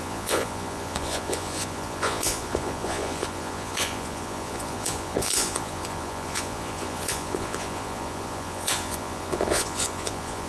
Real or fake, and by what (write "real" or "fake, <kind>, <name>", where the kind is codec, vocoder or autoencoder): fake, vocoder, Vocos